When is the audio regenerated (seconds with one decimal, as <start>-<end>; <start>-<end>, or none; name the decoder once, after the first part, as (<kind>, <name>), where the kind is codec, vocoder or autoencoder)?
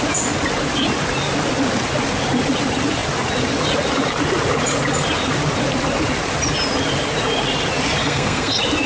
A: 8.0-8.5 (codec, SNAC)